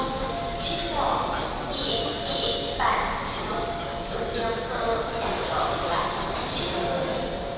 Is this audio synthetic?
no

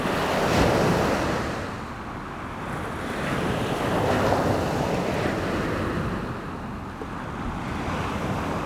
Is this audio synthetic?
no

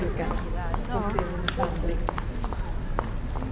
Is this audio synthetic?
no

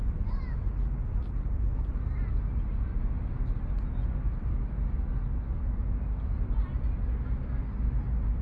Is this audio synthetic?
no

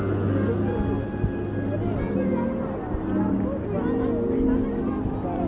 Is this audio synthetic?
no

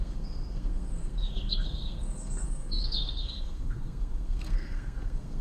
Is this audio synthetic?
yes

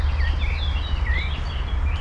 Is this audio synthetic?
no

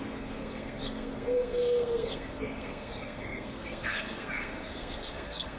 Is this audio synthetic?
yes